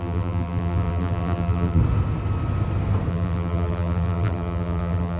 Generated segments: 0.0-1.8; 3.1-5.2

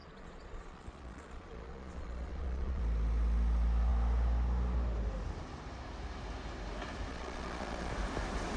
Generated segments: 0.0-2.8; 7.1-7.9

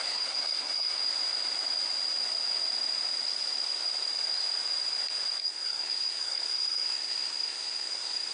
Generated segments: 0.0-1.0; 5.4-8.3

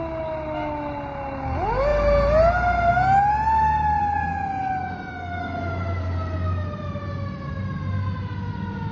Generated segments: none